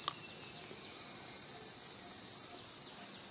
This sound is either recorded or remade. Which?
recorded